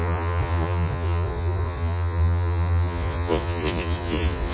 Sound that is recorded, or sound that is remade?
remade